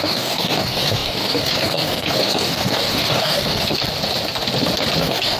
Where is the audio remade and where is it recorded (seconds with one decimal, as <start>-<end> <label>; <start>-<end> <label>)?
0.0-3.8 remade; 3.8-5.0 recorded; 5.0-5.4 remade